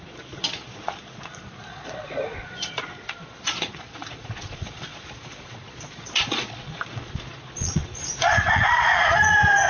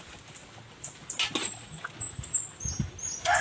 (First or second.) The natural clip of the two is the second